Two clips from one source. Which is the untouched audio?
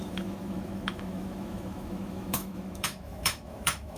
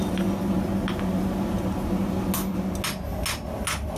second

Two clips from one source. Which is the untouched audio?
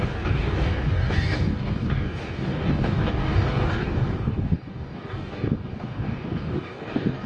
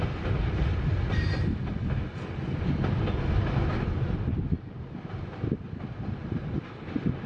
second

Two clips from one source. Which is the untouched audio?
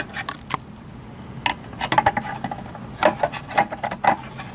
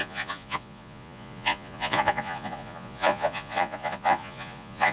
first